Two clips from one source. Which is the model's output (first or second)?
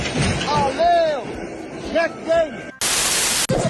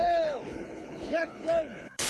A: second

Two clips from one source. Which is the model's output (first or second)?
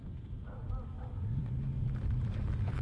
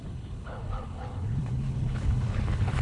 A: second